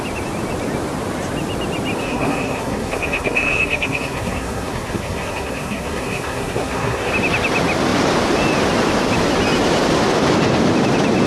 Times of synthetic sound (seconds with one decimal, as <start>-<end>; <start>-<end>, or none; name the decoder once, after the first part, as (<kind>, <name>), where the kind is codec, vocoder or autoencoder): 2.0-7.1 (codec, SNAC)